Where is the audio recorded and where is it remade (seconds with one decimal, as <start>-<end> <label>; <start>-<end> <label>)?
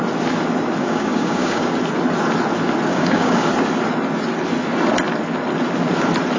0.0-0.8 recorded; 0.8-1.7 remade; 1.7-2.9 recorded; 2.9-3.5 remade; 3.5-6.4 recorded